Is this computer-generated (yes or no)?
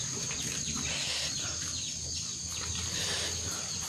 no